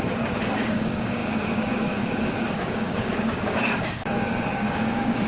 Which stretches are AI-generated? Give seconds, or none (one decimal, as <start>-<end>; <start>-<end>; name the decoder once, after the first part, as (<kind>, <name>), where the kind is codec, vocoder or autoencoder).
0.0-5.3 (codec, DAC)